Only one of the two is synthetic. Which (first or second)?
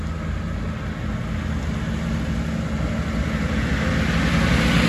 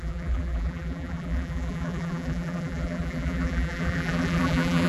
second